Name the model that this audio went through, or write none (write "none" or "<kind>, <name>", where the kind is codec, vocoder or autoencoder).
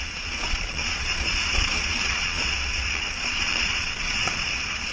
vocoder, Vocos